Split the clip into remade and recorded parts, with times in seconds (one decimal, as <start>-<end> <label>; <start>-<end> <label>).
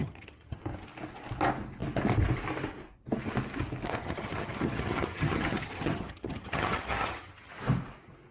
0.0-0.6 remade; 0.6-4.0 recorded; 4.0-7.5 remade; 7.5-8.3 recorded